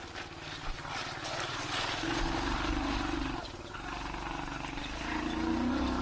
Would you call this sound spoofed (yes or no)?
no